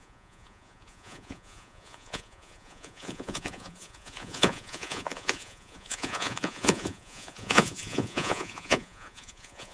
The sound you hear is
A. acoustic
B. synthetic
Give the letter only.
B